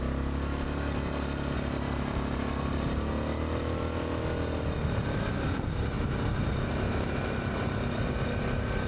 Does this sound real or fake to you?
real